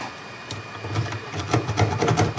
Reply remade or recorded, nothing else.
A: recorded